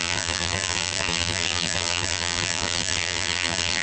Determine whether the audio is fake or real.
fake